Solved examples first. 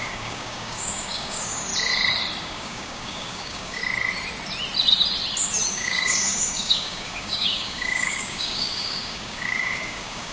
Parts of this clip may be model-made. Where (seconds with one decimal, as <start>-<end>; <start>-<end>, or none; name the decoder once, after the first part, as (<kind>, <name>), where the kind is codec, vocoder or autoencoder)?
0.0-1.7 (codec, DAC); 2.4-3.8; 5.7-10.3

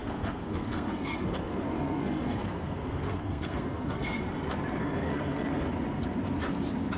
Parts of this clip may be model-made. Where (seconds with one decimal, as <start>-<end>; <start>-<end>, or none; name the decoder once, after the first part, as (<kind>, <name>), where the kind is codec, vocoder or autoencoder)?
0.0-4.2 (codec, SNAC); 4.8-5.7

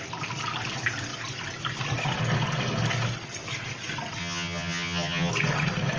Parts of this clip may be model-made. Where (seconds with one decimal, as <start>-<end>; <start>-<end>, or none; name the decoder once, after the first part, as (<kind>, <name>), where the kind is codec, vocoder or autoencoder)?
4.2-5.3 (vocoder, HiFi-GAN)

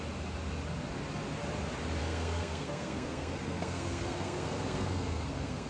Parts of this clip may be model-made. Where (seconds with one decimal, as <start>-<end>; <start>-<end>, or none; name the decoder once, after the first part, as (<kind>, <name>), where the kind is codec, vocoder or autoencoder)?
2.0-5.7 (codec, SNAC)

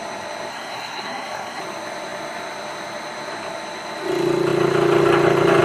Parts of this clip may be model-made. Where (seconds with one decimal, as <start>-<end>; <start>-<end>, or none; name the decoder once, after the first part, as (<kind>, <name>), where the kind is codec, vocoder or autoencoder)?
0.5-1.6 (codec, SNAC)